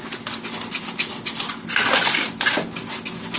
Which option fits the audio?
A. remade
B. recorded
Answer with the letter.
B